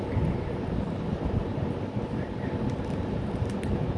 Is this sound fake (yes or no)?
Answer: no